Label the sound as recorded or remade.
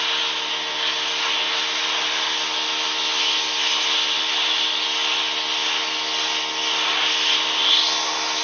recorded